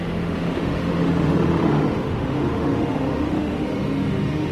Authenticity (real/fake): fake